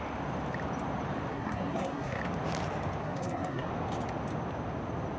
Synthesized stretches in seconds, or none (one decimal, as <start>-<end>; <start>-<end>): 1.3-2.2; 3.0-3.7